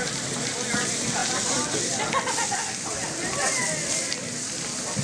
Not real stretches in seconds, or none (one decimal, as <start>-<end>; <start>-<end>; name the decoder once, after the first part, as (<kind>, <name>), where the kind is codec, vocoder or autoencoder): none